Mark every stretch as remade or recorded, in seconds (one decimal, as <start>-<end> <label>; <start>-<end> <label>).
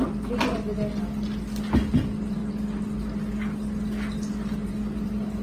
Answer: 0.0-5.4 recorded